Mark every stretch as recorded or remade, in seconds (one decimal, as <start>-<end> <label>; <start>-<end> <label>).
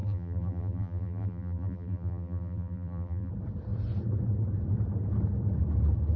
0.0-3.3 remade; 3.3-6.2 recorded